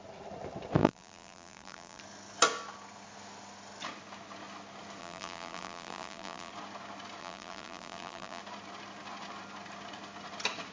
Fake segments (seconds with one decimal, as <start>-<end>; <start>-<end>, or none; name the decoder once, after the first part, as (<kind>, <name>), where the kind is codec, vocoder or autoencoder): 0.8-2.0 (vocoder, BigVGAN v2); 5.0-6.5; 7.2-8.4